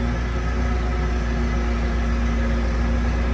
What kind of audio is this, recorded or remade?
recorded